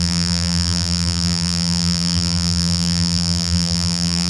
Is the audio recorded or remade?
remade